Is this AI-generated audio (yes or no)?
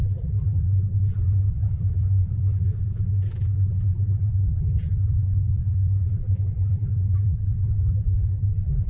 yes